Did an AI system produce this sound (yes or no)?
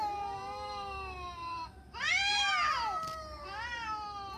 no